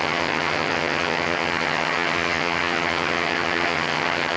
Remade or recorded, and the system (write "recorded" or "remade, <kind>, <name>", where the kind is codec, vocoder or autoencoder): remade, vocoder, HiFi-GAN